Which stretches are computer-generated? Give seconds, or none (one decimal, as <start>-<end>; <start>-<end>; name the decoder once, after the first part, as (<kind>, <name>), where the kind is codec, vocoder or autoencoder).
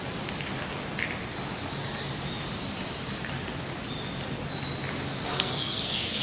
5.3-6.2 (codec, SNAC)